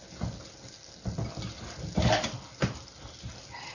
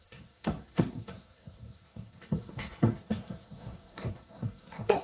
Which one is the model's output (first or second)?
second